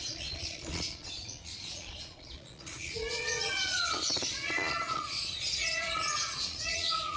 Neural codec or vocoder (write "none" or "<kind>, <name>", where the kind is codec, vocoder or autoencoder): vocoder, Vocos